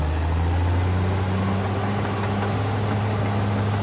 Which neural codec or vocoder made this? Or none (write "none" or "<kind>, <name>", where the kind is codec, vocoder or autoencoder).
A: none